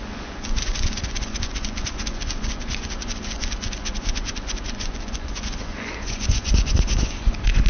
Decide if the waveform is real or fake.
fake